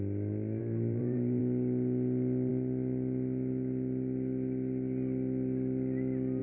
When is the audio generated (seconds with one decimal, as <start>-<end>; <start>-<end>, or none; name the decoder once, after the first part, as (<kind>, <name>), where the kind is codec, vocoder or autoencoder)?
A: 0.6-1.4 (vocoder, BigVGAN v2)